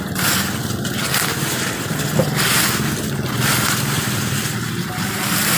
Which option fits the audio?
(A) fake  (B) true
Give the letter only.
B